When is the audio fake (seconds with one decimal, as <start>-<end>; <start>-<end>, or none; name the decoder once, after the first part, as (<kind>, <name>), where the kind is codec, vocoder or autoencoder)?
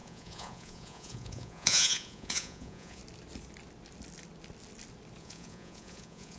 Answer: 0.0-3.0 (vocoder, Vocos); 5.2-6.4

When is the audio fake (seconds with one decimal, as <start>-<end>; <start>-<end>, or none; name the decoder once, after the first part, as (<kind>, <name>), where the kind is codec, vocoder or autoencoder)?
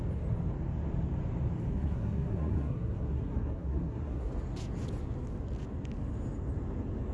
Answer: 1.7-4.3 (codec, SNAC)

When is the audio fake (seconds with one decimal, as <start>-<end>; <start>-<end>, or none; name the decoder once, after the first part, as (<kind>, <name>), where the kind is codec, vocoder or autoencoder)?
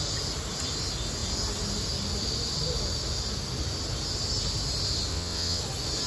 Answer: 5.1-5.6 (vocoder, WaveNeXt)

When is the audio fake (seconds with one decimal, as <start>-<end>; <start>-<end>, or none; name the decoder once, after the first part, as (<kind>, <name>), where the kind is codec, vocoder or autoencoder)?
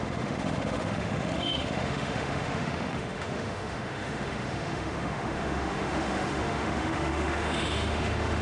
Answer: 0.0-8.4 (autoencoder, DAC-VAE)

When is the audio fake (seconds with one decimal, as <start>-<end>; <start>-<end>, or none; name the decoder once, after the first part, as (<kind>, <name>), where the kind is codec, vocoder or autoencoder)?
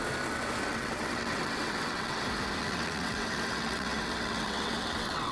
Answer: 0.7-2.2 (vocoder, WaveNeXt); 2.6-5.3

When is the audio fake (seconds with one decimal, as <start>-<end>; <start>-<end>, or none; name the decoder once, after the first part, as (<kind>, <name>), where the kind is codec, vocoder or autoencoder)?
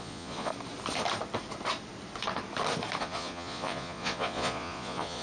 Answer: 0.0-0.5 (vocoder, Vocos); 3.0-5.2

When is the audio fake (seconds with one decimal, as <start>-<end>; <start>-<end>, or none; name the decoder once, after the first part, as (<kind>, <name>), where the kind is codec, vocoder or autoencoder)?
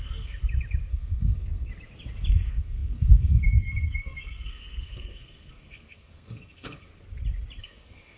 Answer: 0.0-0.4 (codec, SNAC); 0.9-1.7; 2.3-6.9; 7.6-8.2